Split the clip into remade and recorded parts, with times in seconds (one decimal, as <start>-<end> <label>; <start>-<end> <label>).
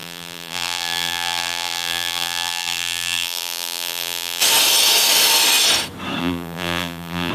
0.0-4.4 remade; 4.4-6.2 recorded; 6.2-7.3 remade